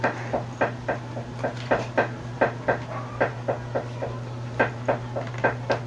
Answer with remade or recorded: recorded